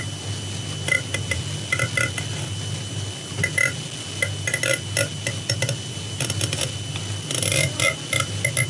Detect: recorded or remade recorded